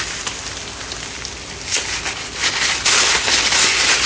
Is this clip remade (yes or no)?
no